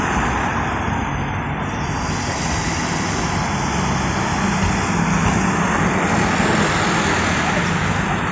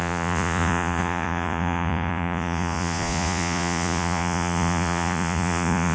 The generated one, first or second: second